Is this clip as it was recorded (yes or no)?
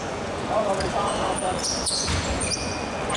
no